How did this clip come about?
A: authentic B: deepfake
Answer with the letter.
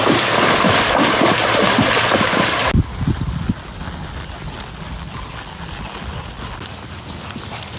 A